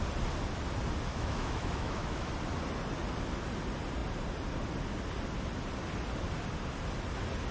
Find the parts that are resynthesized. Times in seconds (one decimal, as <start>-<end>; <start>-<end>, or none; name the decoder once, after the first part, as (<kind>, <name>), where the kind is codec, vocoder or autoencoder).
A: 1.1-2.3 (autoencoder, DAC-VAE)